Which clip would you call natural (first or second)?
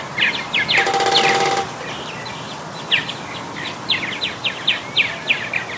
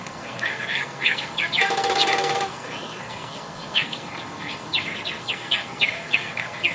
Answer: first